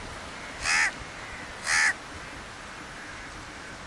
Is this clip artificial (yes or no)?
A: no